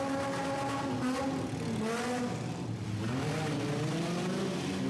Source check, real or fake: real